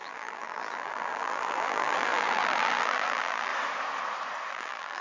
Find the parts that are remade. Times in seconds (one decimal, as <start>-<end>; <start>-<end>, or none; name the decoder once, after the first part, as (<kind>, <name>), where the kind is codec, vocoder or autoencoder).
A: 0.0-3.5 (vocoder, BigVGAN v2); 4.5-5.0